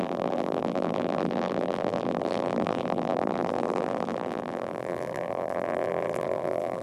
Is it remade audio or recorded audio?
remade